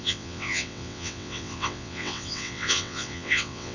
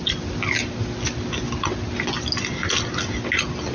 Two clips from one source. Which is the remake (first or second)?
first